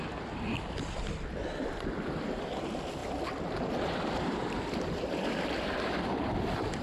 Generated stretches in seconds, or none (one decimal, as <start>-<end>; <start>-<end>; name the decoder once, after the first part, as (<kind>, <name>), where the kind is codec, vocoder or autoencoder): 3.0-4.6 (vocoder, BigVGAN v2)